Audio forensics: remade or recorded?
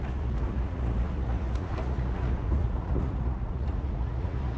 remade